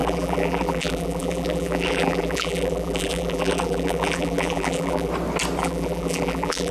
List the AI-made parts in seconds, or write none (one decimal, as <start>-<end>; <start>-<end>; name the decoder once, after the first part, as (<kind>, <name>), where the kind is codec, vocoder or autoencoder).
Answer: 0.0-5.1 (vocoder, BigVGAN v2); 5.6-6.7